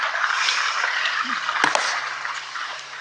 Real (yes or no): yes